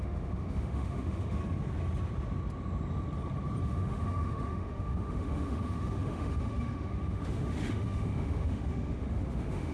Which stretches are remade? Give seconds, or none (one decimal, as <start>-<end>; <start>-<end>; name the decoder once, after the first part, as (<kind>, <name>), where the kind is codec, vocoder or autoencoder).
0.0-1.4 (autoencoder, DAC-VAE); 3.6-9.7